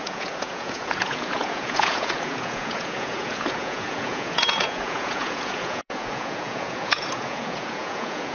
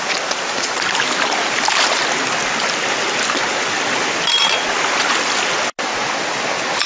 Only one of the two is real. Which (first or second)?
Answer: second